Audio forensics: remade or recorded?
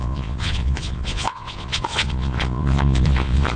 remade